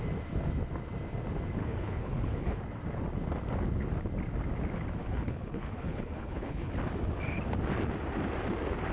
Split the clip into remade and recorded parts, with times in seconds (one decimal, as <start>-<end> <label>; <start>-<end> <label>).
0.0-1.6 recorded; 1.6-2.6 remade; 2.6-5.0 recorded; 5.0-6.7 remade; 6.7-8.9 recorded